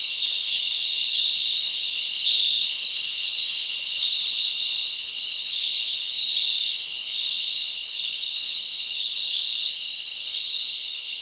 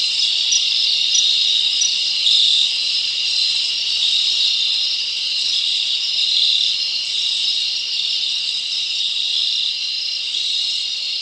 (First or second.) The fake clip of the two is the first